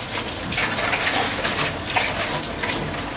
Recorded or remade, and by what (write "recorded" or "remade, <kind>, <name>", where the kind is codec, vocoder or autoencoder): recorded